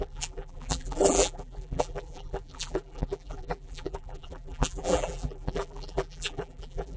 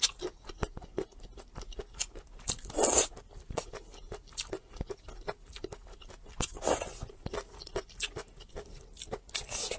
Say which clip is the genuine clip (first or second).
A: second